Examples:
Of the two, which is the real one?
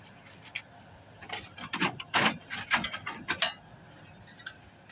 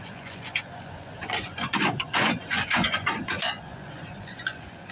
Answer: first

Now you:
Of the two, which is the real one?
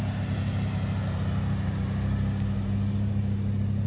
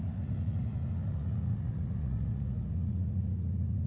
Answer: first